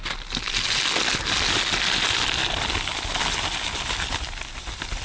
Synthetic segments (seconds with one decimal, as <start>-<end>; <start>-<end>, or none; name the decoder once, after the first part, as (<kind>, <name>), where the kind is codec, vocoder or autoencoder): none